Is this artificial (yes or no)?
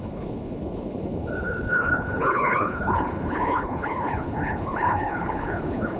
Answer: yes